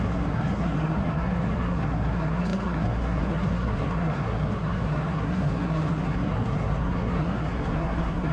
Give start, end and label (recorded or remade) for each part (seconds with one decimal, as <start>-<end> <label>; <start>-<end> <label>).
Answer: 0.0-8.3 remade